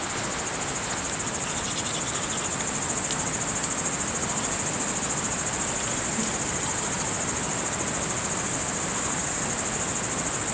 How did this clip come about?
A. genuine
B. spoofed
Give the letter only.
A